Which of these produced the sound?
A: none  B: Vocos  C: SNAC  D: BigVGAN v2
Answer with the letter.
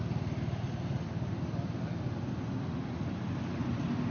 A